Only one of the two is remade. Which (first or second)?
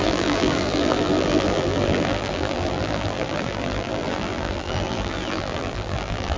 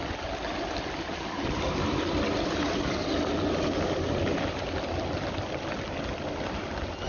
first